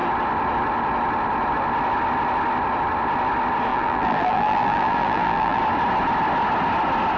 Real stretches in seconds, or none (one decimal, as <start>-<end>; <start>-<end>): 0.0-3.7; 5.6-7.2